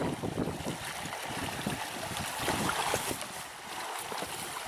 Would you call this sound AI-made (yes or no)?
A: no